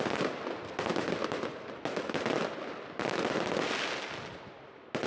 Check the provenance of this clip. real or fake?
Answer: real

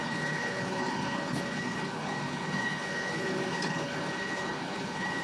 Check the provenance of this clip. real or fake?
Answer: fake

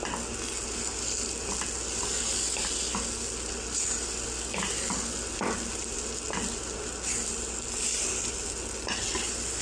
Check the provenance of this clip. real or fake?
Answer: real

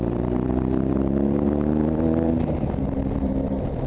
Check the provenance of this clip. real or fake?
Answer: fake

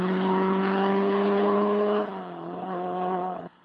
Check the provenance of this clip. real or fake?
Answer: fake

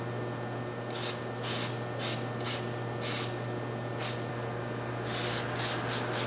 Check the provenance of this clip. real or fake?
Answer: real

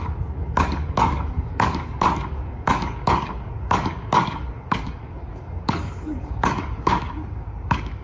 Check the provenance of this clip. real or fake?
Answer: fake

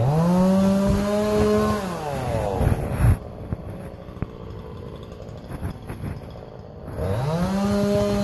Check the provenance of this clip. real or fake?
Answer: real